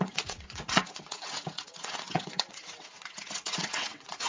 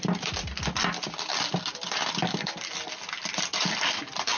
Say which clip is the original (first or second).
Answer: second